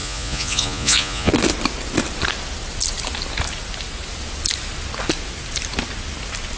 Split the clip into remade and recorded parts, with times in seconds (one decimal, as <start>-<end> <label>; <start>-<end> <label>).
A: 0.0-1.3 remade; 1.3-6.6 recorded